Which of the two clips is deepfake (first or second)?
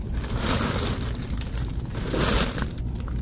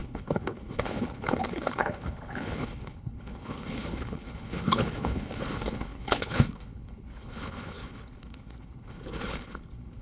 second